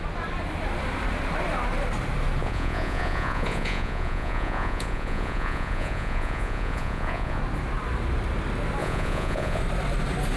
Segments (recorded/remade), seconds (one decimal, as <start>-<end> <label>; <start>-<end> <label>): 0.0-2.4 recorded; 2.4-7.4 remade; 7.4-8.8 recorded; 8.8-9.6 remade; 9.6-10.4 recorded